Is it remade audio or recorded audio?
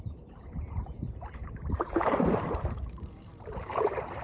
remade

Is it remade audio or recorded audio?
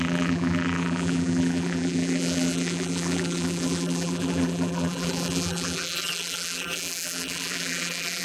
remade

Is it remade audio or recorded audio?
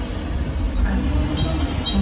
recorded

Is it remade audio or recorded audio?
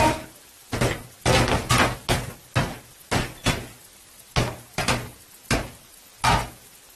recorded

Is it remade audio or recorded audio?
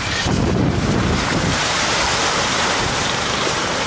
remade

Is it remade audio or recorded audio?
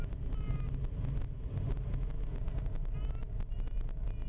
recorded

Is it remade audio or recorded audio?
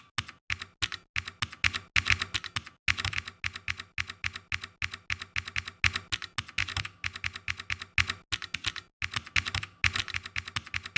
recorded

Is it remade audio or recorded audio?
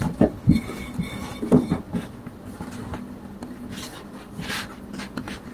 recorded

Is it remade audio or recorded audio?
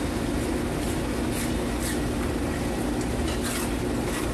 recorded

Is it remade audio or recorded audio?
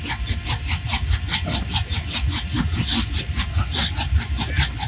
recorded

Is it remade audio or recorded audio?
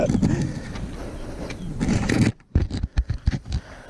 remade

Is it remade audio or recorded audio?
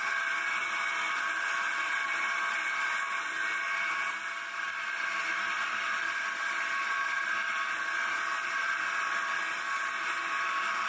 recorded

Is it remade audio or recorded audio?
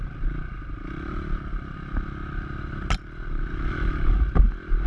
recorded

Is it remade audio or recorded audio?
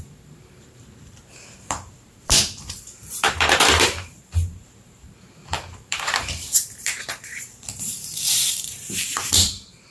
remade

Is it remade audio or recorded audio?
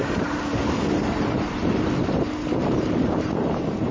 remade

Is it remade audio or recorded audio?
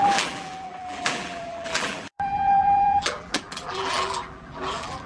remade